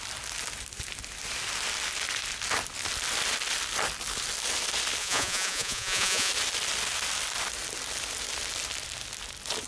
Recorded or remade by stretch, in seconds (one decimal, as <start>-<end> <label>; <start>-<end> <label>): 0.0-5.0 recorded; 5.0-6.3 remade; 6.3-9.7 recorded